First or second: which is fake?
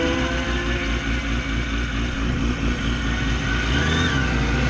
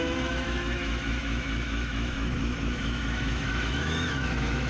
second